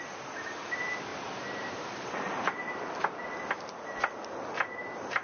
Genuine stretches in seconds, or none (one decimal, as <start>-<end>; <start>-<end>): 0.0-1.1; 2.8-5.2